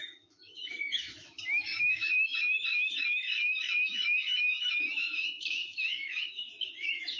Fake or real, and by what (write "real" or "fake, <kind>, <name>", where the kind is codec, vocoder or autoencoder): fake, autoencoder, DAC-VAE